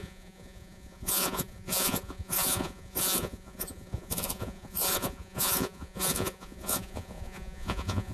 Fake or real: fake